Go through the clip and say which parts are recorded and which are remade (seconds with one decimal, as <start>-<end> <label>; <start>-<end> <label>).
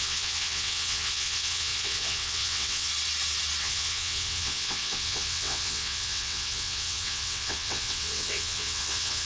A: 0.0-2.9 remade; 2.9-3.6 recorded; 3.6-9.3 remade